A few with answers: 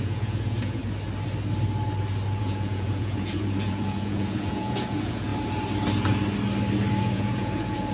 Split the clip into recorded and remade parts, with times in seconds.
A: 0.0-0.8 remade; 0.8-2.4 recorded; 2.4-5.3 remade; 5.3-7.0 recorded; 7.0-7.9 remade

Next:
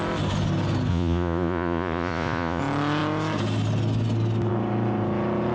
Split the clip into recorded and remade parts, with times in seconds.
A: 0.0-0.9 recorded; 0.9-2.6 remade; 2.6-5.5 recorded